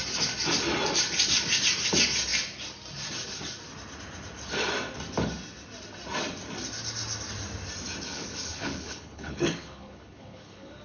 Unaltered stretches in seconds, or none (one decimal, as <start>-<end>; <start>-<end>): 0.0-8.1